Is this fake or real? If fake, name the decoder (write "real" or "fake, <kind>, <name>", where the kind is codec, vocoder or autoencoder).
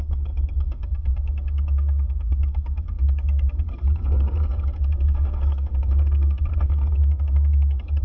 fake, codec, SNAC